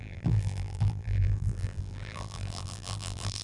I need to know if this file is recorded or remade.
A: remade